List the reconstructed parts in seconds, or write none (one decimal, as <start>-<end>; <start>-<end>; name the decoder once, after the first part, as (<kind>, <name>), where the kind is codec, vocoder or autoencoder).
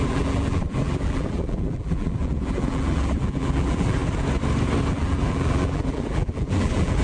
0.0-4.0 (vocoder, BigVGAN v2); 4.9-7.0